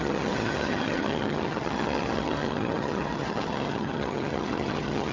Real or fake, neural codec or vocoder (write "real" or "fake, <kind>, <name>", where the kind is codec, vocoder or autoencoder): fake, vocoder, HiFi-GAN